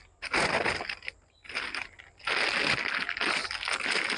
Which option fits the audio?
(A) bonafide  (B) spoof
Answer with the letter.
A